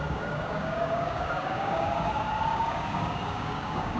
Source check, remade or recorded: remade